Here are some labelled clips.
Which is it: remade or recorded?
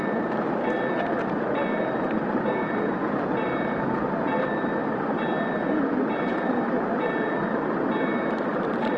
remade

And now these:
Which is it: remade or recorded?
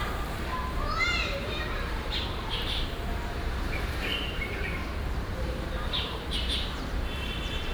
remade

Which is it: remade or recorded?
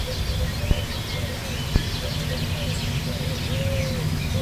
recorded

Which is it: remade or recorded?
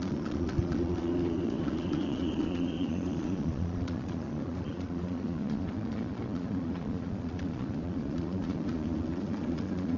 remade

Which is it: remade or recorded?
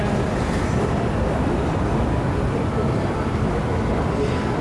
recorded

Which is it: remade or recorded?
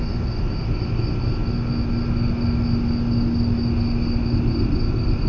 recorded